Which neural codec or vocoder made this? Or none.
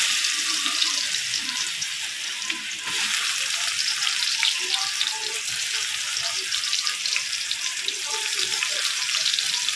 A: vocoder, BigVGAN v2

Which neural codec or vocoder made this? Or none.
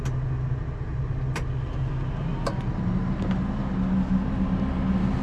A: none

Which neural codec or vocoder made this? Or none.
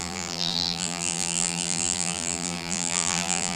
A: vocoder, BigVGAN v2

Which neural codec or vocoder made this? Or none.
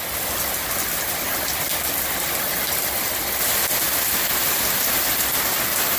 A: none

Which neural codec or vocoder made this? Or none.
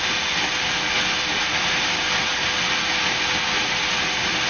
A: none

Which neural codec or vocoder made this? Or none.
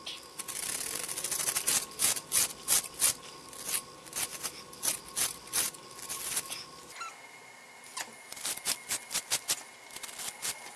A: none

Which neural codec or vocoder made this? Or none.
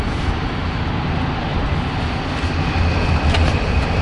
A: none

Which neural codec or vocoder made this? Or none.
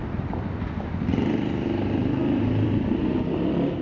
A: vocoder, BigVGAN v2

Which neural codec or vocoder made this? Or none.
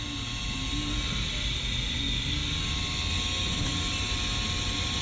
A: none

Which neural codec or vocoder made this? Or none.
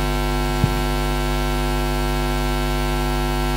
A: none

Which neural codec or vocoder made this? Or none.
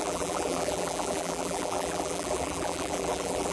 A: vocoder, BigVGAN v2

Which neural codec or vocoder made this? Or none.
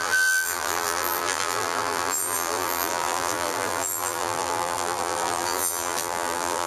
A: vocoder, BigVGAN v2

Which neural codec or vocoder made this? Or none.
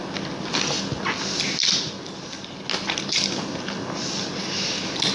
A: none